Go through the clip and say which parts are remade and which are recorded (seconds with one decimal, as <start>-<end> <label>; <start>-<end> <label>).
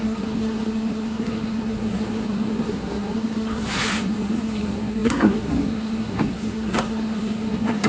0.0-7.9 remade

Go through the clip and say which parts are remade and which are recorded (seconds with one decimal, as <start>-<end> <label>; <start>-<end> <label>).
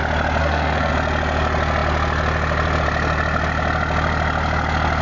0.0-0.4 recorded; 0.4-0.9 remade; 0.9-5.0 recorded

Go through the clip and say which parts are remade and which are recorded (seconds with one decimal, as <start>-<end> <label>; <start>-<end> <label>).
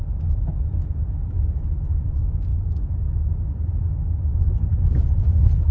0.0-5.7 recorded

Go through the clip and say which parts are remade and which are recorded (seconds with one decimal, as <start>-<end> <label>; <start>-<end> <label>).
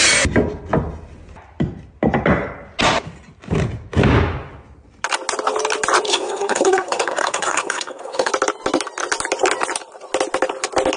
0.0-6.1 recorded; 6.1-8.3 remade; 8.3-11.0 recorded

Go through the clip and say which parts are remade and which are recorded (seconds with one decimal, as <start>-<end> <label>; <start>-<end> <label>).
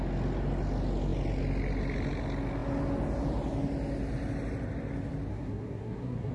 0.0-5.3 recorded; 5.3-6.3 remade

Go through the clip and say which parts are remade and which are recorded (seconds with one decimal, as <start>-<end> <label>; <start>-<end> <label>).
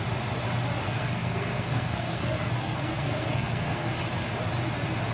0.0-0.8 recorded; 0.8-3.9 remade; 3.9-5.1 recorded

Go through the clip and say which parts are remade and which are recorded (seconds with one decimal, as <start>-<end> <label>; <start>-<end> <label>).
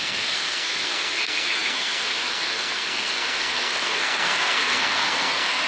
0.0-5.7 remade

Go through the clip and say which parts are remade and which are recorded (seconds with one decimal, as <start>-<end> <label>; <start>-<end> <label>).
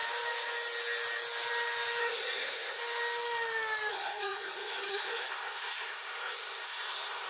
0.0-2.0 recorded; 2.0-2.8 remade; 2.8-3.9 recorded; 3.9-7.3 remade